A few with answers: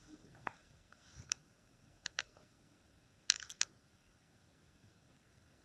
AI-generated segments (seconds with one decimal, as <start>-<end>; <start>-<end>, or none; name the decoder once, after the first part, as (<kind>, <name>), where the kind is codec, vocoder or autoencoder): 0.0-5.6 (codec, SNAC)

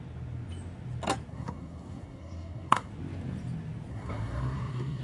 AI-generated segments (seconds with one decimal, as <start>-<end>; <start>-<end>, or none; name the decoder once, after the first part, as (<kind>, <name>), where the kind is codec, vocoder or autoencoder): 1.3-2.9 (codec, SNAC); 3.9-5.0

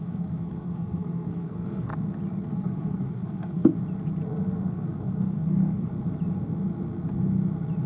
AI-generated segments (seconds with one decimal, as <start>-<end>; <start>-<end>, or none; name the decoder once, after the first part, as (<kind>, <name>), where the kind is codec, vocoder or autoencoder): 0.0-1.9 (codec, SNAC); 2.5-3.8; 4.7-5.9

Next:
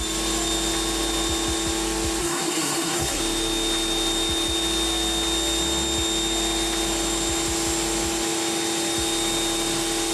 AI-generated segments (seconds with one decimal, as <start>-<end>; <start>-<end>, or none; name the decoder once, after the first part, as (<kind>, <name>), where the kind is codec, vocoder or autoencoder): 2.2-3.2 (codec, SNAC)

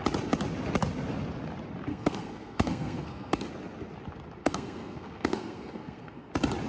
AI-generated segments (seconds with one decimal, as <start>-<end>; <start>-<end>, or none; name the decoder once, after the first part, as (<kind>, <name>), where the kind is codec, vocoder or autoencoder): 1.9-3.5 (codec, SNAC); 4.4-6.3

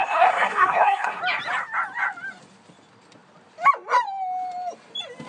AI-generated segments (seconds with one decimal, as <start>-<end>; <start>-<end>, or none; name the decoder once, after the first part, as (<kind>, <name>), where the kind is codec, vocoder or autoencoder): 0.0-1.2 (codec, SNAC)